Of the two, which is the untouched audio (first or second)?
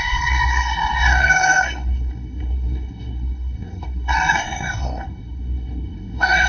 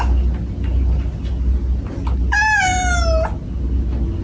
second